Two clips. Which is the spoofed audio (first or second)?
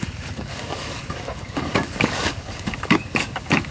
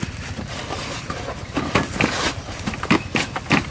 first